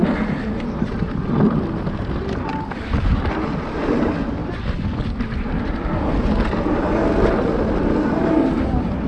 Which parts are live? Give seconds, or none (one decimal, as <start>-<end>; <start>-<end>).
0.0-9.1